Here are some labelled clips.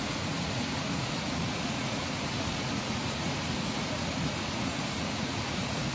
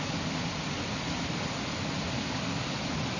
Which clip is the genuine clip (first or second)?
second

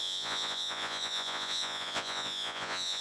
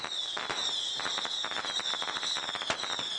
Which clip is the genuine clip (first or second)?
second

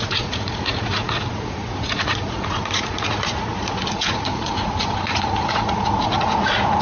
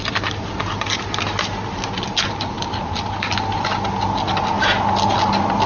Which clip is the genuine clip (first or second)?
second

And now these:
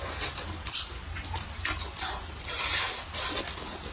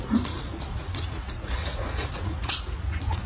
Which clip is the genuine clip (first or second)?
first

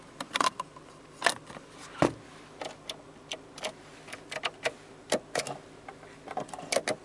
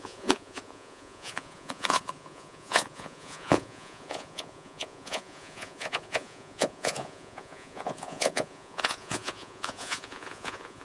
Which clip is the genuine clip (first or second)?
first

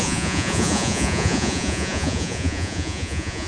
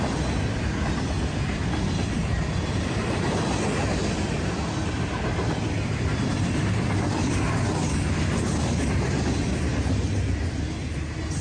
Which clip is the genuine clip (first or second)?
second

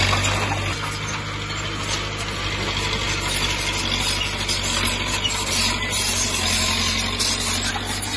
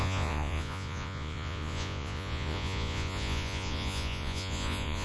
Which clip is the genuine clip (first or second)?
first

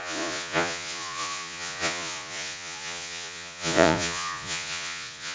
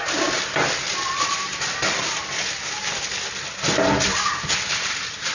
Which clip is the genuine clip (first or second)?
second